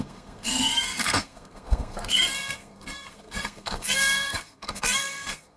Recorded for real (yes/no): no